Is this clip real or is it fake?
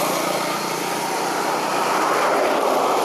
real